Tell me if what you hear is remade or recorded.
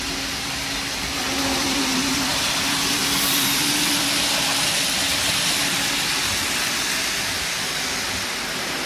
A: recorded